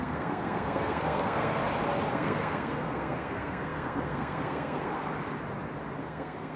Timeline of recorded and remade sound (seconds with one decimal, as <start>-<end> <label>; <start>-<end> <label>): 0.0-1.6 remade; 1.6-2.1 recorded; 2.1-5.1 remade; 5.1-6.0 recorded; 6.0-6.6 remade